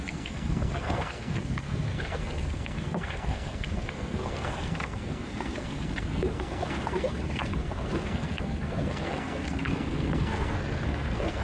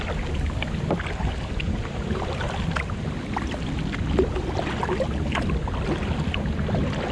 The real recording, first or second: second